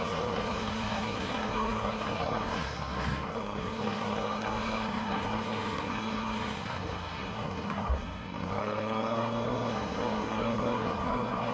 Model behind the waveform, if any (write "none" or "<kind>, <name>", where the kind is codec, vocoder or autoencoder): codec, SNAC